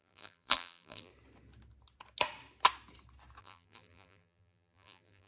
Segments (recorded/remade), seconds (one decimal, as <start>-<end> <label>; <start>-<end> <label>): 0.0-1.1 remade; 1.1-3.4 recorded; 3.4-5.3 remade